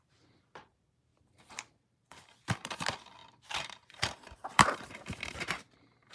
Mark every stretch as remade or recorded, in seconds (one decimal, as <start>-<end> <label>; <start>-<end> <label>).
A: 0.0-6.1 remade